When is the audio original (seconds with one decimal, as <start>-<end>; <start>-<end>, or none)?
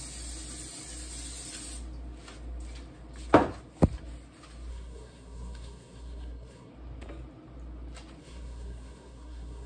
0.0-4.7; 6.7-8.2